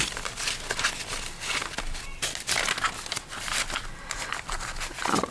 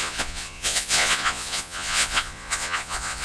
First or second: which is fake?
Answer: second